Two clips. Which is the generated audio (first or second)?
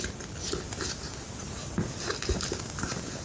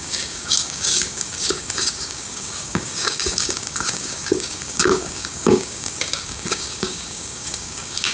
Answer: second